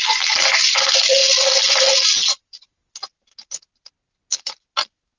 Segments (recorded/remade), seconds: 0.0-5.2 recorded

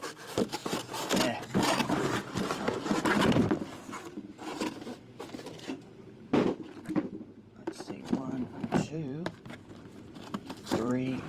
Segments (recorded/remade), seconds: 0.0-11.3 remade

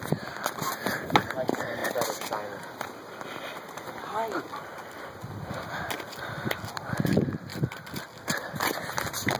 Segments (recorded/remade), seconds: 0.0-9.4 recorded

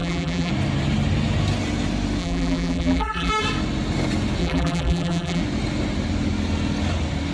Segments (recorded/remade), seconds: 0.0-0.5 remade; 0.5-2.2 recorded; 2.2-3.3 remade; 3.3-4.4 recorded; 4.4-5.4 remade; 5.4-7.3 recorded

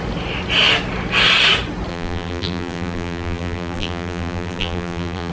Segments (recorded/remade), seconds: 0.0-1.9 recorded; 1.9-5.3 remade

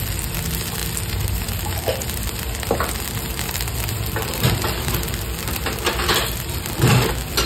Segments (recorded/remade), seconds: 0.0-0.8 recorded; 0.8-1.4 remade; 1.4-1.9 recorded; 1.9-4.9 remade; 4.9-7.5 recorded

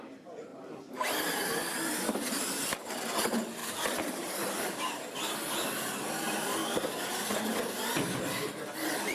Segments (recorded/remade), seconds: 0.0-3.6 recorded; 3.6-4.3 remade; 4.3-9.1 recorded